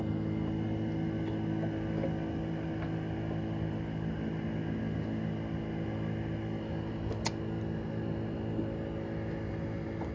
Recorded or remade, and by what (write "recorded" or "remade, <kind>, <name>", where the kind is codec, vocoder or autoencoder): recorded